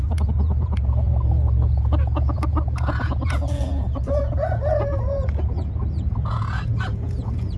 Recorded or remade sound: remade